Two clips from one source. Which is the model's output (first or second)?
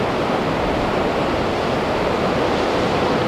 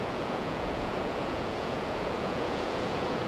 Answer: second